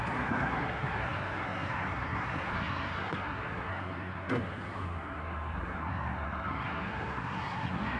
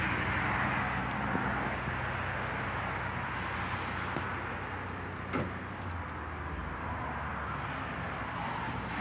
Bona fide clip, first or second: second